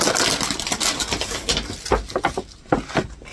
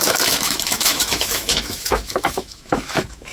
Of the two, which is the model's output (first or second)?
second